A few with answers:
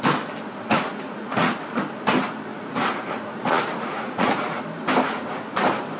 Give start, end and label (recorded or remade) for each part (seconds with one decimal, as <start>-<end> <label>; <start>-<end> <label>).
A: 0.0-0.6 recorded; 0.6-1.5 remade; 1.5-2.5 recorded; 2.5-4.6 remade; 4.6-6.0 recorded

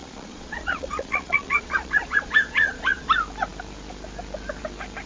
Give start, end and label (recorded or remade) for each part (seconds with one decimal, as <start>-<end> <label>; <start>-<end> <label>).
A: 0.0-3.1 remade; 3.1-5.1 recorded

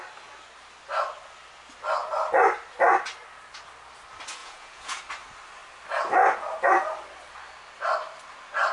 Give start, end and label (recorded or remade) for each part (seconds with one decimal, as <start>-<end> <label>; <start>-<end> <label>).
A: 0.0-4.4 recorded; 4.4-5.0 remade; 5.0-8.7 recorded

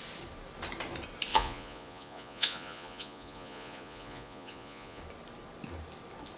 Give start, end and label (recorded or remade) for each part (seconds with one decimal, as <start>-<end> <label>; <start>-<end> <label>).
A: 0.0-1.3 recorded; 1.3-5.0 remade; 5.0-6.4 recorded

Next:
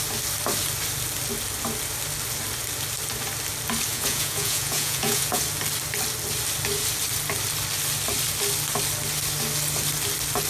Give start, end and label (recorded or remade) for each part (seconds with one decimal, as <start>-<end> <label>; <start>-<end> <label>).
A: 0.0-3.9 recorded; 3.9-5.4 remade; 5.4-10.5 recorded

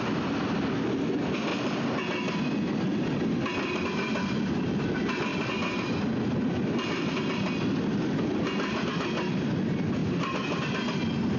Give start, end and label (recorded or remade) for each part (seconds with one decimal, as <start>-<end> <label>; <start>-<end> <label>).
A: 0.0-11.4 recorded

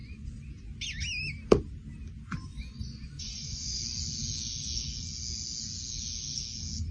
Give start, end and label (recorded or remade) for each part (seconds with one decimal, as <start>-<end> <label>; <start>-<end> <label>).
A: 0.0-0.5 remade; 0.5-2.5 recorded; 2.5-3.8 remade; 3.8-6.9 recorded

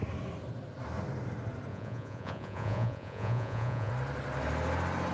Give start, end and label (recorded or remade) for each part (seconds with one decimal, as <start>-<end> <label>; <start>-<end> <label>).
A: 0.0-1.7 recorded; 1.7-3.9 remade; 3.9-5.1 recorded